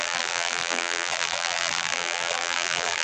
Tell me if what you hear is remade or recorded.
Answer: remade